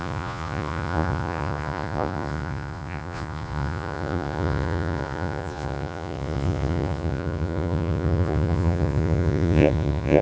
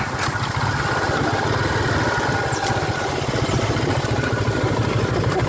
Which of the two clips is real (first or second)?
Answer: second